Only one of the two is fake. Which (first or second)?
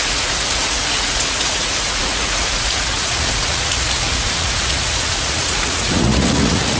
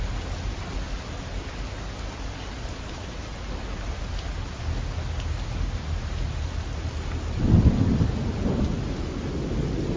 first